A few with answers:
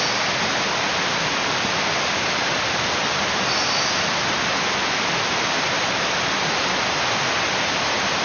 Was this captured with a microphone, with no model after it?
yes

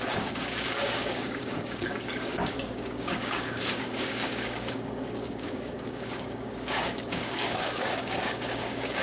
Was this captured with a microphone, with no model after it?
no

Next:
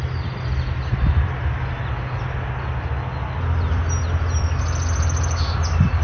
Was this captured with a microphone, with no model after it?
yes